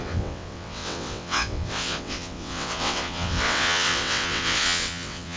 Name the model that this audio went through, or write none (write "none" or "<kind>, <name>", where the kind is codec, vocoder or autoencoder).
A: vocoder, WaveNeXt